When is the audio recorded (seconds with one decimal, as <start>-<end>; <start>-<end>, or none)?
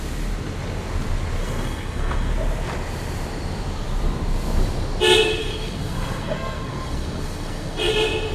0.0-1.4; 2.3-5.4; 7.9-8.3